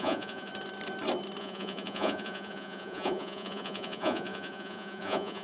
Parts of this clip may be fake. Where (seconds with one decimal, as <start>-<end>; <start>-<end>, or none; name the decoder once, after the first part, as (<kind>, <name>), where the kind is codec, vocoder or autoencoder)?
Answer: 0.0-0.5 (vocoder, Vocos); 1.4-5.4